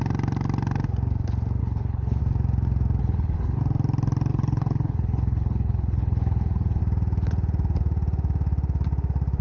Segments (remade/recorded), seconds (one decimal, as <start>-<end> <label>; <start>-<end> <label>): 0.0-1.6 recorded; 1.6-2.2 remade; 2.2-3.0 recorded; 3.0-3.6 remade; 3.6-4.3 recorded; 4.3-6.8 remade; 6.8-9.4 recorded